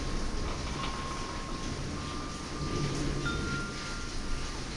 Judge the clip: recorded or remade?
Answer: recorded